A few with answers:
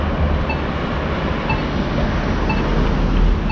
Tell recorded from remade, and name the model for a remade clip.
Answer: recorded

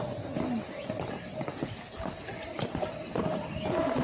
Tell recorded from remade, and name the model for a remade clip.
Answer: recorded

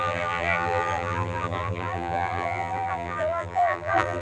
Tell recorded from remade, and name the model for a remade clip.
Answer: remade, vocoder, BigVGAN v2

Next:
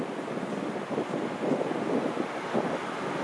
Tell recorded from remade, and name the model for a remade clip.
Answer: recorded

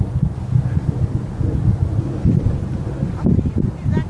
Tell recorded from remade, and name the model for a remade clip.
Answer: recorded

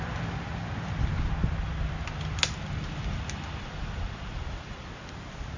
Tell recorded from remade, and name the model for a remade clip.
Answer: recorded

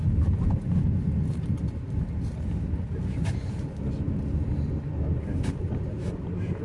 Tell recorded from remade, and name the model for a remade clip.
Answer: recorded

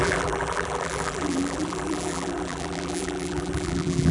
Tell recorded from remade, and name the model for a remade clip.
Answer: remade, vocoder, BigVGAN v2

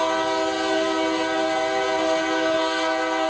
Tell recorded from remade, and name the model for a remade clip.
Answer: recorded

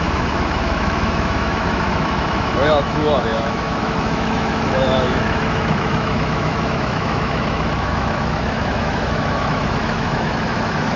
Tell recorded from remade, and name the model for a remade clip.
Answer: remade, autoencoder, DAC-VAE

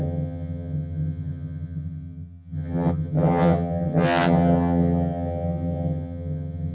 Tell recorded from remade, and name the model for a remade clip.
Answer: remade, vocoder, HiFi-GAN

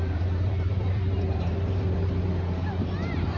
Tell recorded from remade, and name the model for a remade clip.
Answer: remade, vocoder, BigVGAN v2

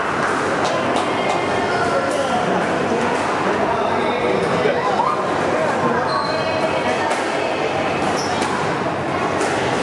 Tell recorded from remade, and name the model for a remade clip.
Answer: recorded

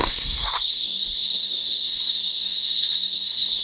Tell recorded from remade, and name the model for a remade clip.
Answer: remade, codec, SNAC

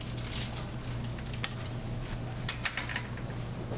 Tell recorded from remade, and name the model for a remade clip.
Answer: recorded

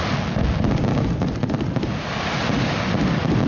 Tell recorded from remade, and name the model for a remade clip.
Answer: recorded